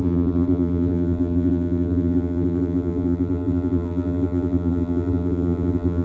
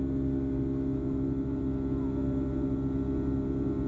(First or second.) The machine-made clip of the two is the first